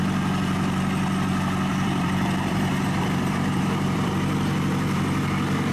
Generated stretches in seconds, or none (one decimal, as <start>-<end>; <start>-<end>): 1.7-4.1